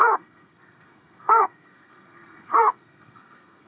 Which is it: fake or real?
fake